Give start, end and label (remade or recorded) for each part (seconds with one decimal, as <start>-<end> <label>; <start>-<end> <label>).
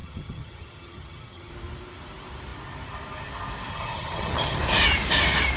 0.0-1.5 remade; 1.5-3.7 recorded; 3.7-4.6 remade; 4.6-5.6 recorded